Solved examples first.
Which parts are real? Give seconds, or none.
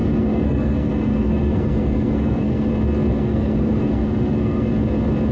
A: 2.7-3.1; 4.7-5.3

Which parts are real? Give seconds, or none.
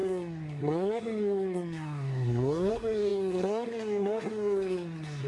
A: none